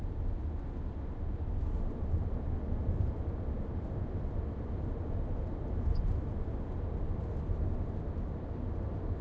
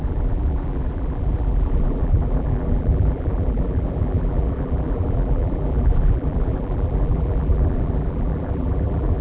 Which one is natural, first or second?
first